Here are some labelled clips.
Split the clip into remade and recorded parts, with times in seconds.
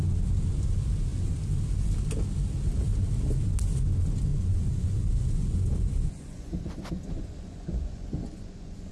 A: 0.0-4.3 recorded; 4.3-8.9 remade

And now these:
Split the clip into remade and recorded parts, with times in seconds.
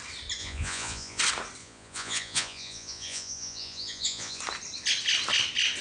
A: 0.0-0.4 recorded; 0.4-1.2 remade; 1.2-1.6 recorded; 1.6-4.4 remade; 4.4-5.8 recorded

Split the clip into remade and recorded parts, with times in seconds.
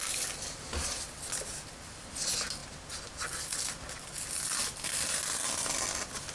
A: 0.0-6.3 recorded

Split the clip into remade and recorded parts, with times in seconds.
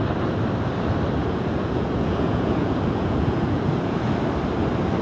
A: 0.0-1.2 recorded; 1.2-4.2 remade; 4.2-5.0 recorded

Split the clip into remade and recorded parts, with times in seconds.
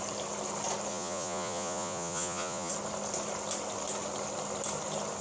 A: 0.0-0.9 recorded; 0.9-2.7 remade; 2.7-5.2 recorded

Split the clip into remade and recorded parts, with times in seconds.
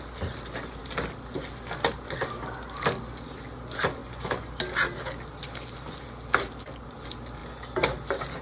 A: 0.0-4.0 recorded; 4.0-4.5 remade; 4.5-8.4 recorded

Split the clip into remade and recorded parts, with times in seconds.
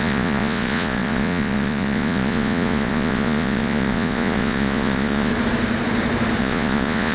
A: 0.0-5.3 remade; 5.3-6.4 recorded; 6.4-7.1 remade